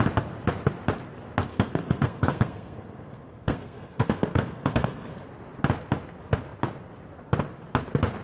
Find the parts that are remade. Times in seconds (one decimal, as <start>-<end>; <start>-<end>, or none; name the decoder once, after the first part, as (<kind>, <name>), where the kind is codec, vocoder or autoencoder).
1.5-5.3 (codec, SNAC)